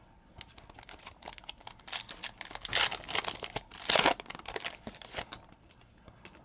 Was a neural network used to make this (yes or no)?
no